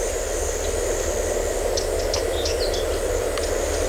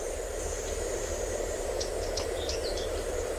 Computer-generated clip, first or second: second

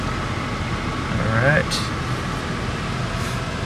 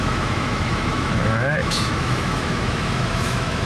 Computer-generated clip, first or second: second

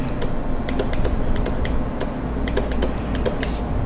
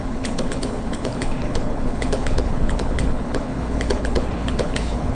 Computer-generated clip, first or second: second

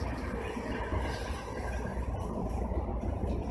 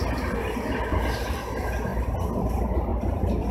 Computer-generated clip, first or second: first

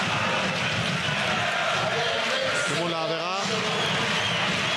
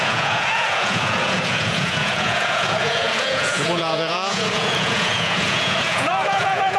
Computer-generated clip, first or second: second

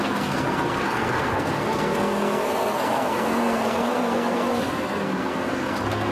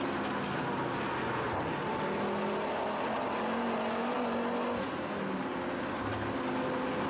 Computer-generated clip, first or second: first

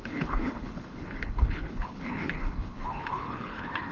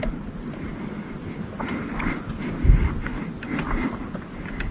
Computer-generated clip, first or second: first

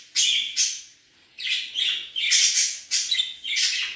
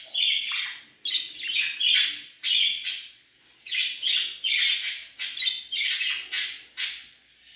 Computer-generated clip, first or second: first